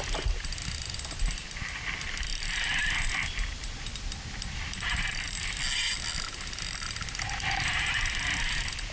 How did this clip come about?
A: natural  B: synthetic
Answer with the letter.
A